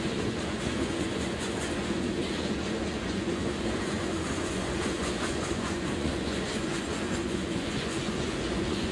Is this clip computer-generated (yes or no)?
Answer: yes